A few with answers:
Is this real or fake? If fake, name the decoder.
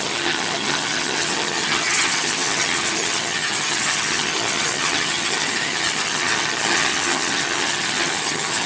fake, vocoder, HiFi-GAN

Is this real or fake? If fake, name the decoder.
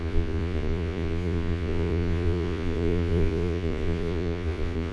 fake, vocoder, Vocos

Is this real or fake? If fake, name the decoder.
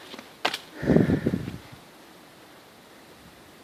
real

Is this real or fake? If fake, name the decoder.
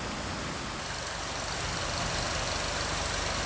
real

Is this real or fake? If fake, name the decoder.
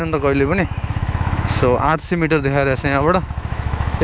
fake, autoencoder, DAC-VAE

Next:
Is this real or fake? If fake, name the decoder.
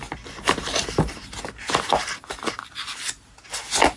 real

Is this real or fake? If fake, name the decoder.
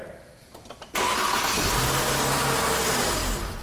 real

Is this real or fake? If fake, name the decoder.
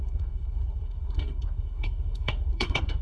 fake, codec, SNAC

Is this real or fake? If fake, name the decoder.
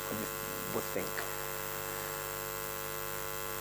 real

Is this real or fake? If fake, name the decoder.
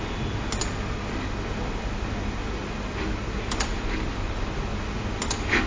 real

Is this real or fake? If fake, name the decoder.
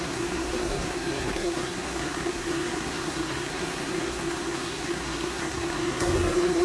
fake, codec, SNAC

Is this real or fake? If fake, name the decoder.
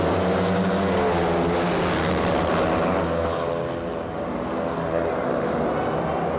real